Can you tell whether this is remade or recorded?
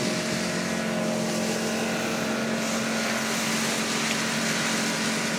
recorded